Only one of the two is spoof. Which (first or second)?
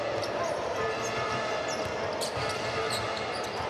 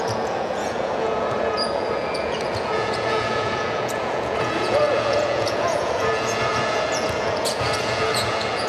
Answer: second